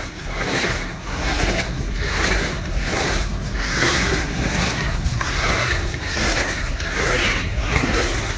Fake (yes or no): yes